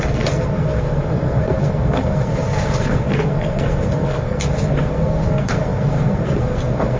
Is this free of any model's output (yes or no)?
no